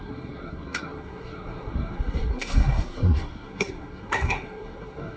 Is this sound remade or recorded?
remade